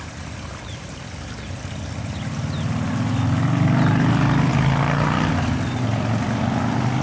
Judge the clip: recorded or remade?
recorded